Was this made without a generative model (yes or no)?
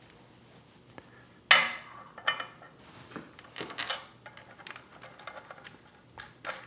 yes